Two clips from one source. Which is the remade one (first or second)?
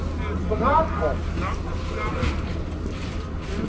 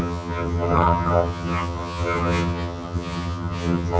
second